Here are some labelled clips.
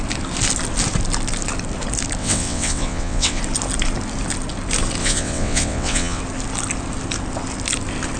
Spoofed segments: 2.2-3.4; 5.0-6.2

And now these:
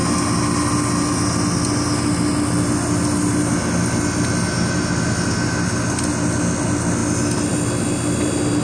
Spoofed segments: none

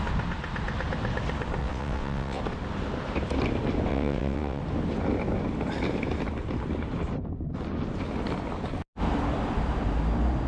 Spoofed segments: 1.6-2.4; 3.9-4.6